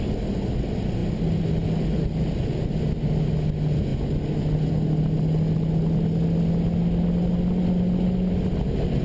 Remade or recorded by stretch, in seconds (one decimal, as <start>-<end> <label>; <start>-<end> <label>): 0.0-9.0 recorded